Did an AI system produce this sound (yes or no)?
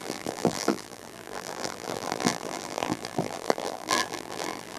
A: yes